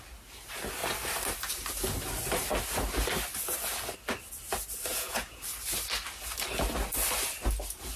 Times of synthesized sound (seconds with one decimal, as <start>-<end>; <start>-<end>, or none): 4.9-5.4